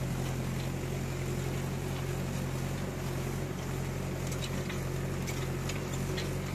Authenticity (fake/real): real